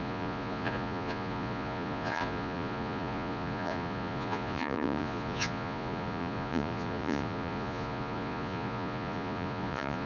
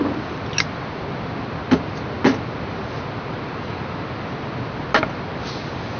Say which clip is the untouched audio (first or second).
second